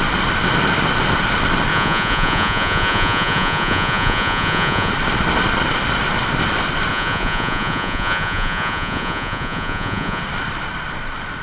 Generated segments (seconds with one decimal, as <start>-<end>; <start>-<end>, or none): 1.7-4.9; 6.9-10.2